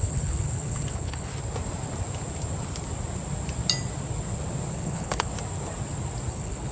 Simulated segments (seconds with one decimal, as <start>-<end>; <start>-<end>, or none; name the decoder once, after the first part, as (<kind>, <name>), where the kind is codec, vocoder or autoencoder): 0.0-1.3 (codec, HILCodec); 4.7-5.3; 6.3-6.7

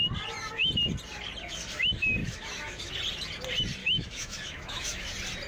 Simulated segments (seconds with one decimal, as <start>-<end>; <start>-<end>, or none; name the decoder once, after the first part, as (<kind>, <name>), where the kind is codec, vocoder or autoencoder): 2.2-2.9 (autoencoder, DAC-VAE); 3.8-5.1

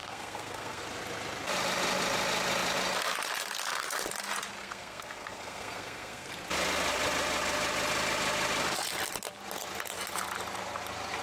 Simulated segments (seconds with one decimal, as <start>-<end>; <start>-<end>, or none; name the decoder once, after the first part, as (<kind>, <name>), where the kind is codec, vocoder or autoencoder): 0.0-0.8 (codec, SNAC); 4.6-6.3

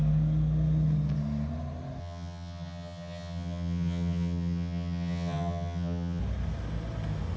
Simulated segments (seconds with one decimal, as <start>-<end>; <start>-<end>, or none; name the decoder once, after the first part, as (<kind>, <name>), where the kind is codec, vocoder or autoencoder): 2.0-6.2 (vocoder, HiFi-GAN)

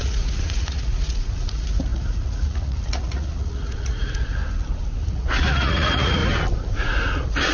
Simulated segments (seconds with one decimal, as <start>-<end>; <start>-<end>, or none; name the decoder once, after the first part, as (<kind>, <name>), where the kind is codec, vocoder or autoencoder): 0.0-4.4 (vocoder, Vocos); 5.0-6.2; 6.8-7.5

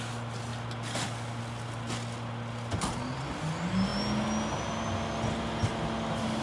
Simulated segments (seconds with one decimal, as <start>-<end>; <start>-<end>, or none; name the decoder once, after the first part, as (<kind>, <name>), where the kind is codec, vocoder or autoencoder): none